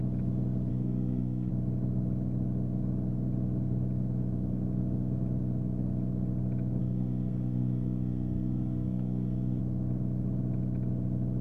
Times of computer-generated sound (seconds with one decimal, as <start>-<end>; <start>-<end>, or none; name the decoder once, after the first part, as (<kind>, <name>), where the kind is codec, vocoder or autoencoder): 0.7-1.5 (codec, SNAC); 6.8-9.6

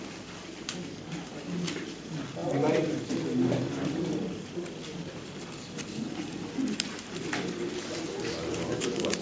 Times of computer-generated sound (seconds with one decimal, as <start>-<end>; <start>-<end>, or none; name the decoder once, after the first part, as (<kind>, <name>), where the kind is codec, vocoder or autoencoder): none